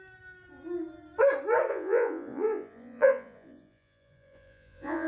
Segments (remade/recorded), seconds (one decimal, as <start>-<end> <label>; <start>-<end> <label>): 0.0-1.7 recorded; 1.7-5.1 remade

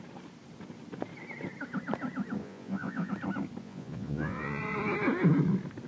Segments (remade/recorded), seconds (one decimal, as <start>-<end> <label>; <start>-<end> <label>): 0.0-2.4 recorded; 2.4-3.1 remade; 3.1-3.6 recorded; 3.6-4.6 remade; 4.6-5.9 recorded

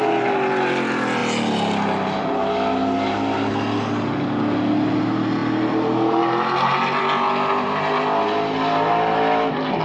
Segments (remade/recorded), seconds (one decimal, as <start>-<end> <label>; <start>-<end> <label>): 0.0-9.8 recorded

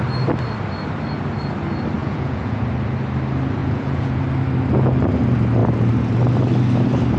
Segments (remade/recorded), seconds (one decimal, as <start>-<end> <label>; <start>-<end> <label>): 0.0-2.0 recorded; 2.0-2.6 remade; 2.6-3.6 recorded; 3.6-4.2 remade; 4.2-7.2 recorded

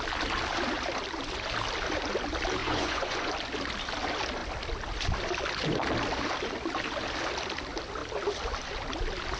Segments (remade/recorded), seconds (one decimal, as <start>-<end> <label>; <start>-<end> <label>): 0.0-2.6 recorded; 2.6-3.3 remade; 3.3-9.4 recorded